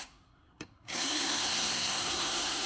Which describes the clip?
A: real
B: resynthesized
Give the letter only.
B